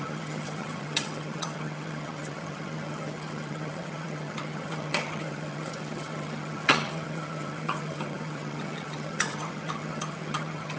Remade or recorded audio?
remade